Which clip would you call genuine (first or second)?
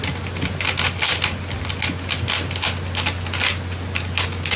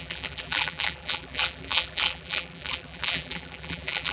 first